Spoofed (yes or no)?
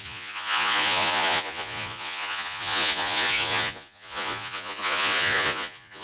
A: yes